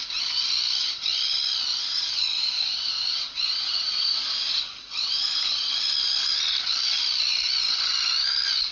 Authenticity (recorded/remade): remade